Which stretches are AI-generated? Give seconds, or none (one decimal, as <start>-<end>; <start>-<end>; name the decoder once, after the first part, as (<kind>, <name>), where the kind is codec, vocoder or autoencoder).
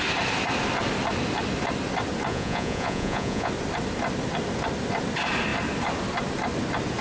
2.3-3.5 (vocoder, Vocos)